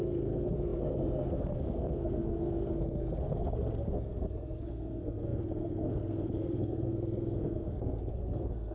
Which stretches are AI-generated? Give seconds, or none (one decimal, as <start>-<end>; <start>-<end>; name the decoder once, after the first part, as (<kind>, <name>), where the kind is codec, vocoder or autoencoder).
0.0-8.7 (codec, SNAC)